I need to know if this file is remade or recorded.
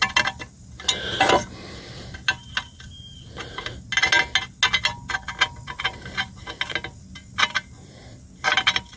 recorded